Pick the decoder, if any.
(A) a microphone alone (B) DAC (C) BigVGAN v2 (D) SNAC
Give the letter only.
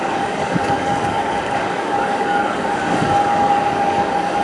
B